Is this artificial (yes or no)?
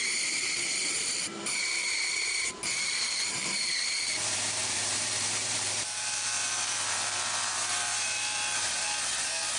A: yes